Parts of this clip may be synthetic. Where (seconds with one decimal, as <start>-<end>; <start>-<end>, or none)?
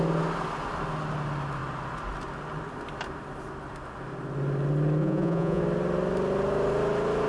5.0-5.6